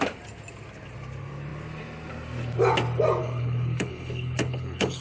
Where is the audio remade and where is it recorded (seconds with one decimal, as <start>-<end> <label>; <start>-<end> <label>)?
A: 0.0-3.2 recorded; 3.2-5.0 remade